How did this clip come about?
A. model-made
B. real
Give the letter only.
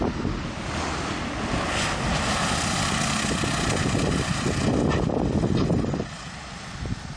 B